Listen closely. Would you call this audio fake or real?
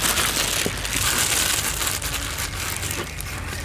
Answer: real